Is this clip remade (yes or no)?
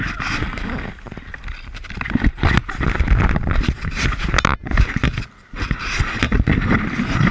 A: no